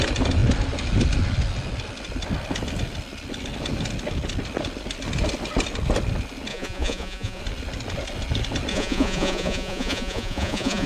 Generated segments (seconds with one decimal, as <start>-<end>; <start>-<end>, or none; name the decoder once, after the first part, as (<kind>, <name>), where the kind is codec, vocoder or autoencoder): 6.5-7.4 (vocoder, Vocos); 8.7-10.9